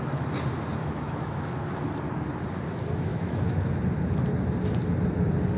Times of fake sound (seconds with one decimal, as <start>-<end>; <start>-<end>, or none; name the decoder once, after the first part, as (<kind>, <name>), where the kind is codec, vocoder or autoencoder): 0.8-1.7 (autoencoder, DAC-VAE); 3.1-3.7

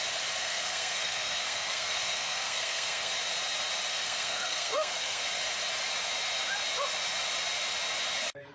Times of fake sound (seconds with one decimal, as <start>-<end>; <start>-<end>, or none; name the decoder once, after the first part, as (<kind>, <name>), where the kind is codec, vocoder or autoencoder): 0.4-3.1 (codec, SNAC); 3.9-5.2

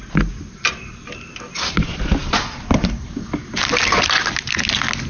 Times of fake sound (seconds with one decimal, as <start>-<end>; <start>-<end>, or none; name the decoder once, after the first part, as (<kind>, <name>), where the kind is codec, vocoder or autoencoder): none

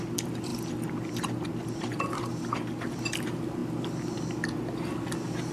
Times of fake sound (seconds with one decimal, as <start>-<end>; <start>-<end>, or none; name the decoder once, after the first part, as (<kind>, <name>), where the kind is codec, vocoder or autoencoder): none

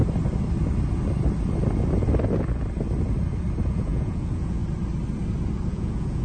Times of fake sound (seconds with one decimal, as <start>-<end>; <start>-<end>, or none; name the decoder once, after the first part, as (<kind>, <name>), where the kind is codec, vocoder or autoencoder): 3.7-4.6 (vocoder, Vocos); 5.7-6.2

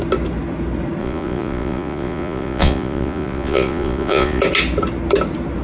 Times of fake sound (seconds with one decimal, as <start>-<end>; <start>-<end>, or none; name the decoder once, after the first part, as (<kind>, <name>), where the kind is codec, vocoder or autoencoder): 1.0-4.4 (vocoder, Vocos)

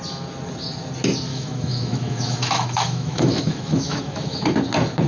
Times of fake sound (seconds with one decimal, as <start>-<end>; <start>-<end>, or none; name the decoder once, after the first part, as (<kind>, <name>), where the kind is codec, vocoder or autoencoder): 1.3-4.4 (autoencoder, DAC-VAE)